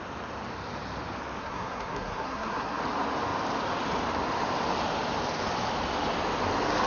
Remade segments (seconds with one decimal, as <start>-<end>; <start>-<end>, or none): 1.4-2.8